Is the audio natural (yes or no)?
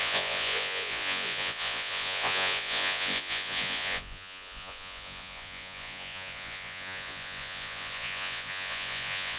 no